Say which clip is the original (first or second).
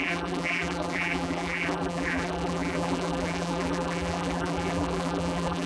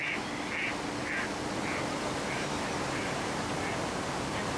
second